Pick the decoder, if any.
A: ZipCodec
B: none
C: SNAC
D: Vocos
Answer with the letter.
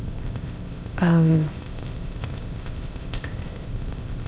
A